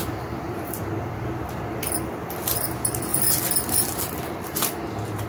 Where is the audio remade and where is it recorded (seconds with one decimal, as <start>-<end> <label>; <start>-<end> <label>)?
0.0-0.8 remade; 0.8-3.1 recorded; 3.1-4.8 remade; 4.8-5.3 recorded